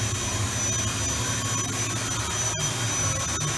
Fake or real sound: real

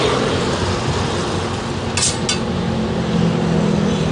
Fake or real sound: real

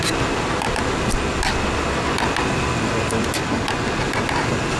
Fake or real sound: real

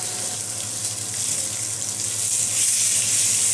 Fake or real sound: real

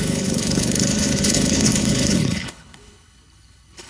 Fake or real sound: fake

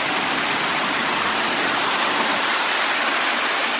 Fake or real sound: real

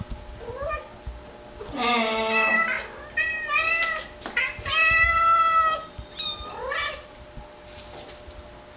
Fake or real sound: real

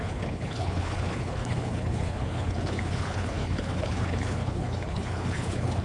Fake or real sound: fake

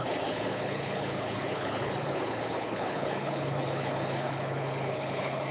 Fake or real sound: fake